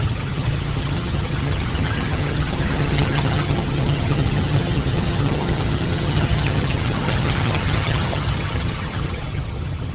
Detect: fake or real fake